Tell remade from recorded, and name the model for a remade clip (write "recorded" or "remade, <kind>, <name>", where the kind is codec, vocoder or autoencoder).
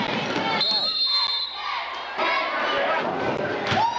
recorded